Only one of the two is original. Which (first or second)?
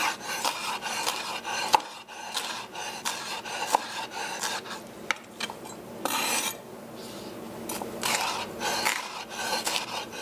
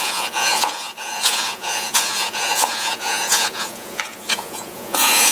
first